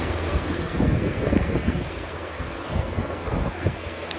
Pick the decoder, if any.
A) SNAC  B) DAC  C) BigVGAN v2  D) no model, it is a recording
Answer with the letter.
A